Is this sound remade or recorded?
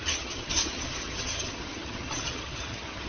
remade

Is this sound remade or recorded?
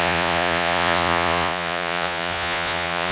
remade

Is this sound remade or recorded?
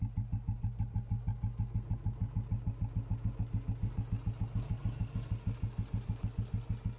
recorded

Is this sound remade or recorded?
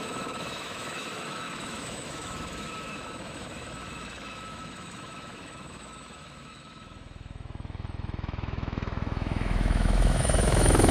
remade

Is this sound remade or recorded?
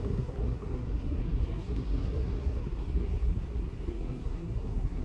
remade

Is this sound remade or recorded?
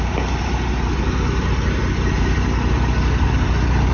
recorded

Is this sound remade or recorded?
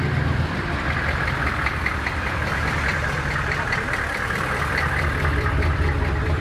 remade